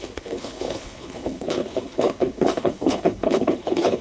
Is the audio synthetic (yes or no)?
yes